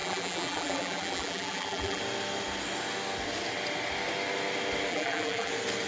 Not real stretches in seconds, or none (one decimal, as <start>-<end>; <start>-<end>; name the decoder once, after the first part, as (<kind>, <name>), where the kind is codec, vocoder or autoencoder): 0.0-2.0 (vocoder, BigVGAN v2); 4.9-5.5